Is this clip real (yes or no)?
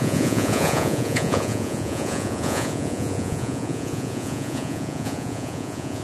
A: no